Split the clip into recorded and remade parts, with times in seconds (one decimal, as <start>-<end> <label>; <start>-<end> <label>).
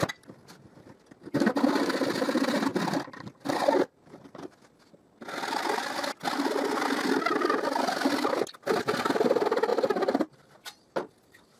0.0-11.6 recorded